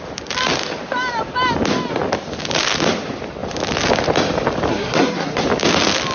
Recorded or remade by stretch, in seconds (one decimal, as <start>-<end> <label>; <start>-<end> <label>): 0.0-4.7 recorded; 4.7-5.4 remade; 5.4-6.1 recorded